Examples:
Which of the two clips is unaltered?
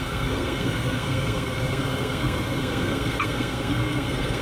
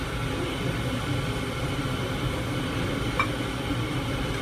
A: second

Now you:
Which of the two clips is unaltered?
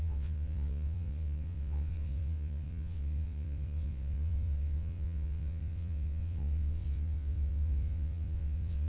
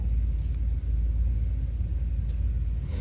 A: second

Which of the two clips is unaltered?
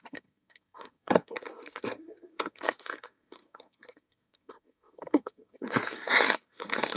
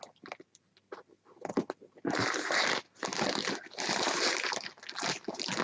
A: second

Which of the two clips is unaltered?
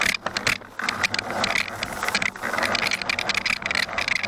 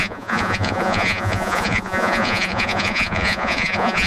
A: first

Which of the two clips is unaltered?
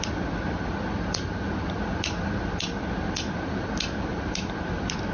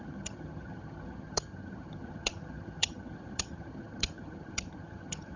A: first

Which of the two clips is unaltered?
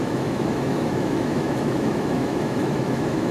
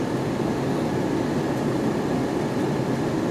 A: second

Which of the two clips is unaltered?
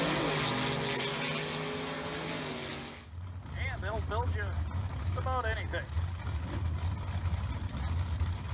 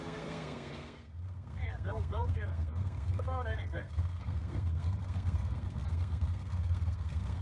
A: first